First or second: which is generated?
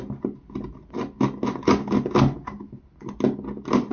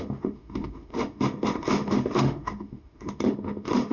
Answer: second